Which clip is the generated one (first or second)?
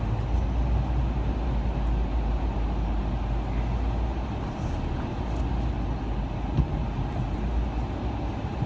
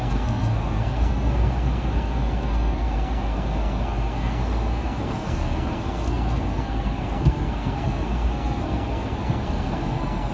second